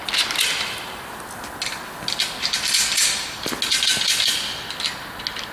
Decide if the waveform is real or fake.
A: real